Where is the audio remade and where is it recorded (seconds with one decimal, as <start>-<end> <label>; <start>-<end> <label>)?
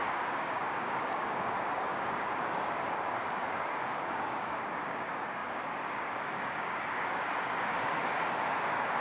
0.0-9.0 remade